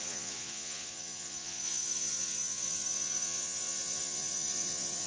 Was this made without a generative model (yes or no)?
no